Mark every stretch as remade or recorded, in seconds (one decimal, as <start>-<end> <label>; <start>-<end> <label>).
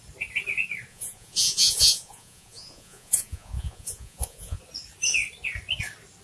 0.0-0.9 recorded; 0.9-4.6 remade; 4.6-6.2 recorded